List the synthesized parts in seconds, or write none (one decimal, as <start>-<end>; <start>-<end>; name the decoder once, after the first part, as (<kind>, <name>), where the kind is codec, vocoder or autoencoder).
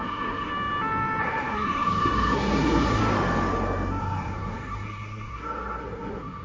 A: 0.0-0.5 (codec, SNAC); 1.2-3.0; 4.0-6.4